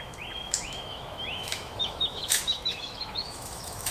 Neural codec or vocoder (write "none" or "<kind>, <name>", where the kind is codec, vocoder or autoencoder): autoencoder, DAC-VAE